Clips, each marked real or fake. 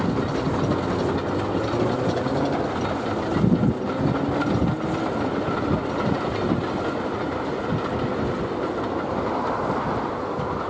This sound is real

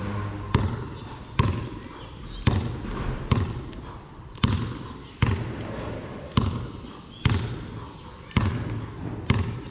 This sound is real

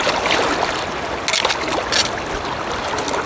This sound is real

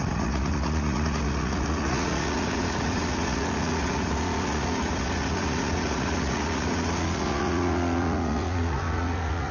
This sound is fake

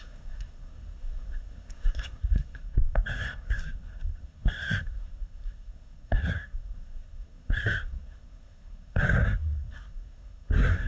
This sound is fake